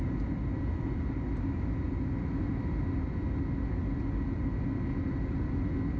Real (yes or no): yes